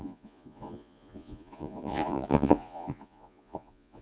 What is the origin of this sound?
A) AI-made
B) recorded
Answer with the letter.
A